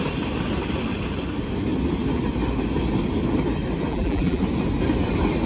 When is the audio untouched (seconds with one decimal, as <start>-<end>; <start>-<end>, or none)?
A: 0.0-3.9; 4.4-5.5